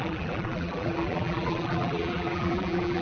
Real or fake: fake